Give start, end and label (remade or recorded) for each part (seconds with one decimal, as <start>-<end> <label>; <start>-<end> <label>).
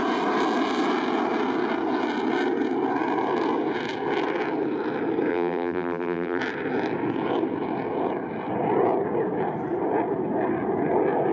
0.0-5.3 recorded; 5.3-6.4 remade; 6.4-11.3 recorded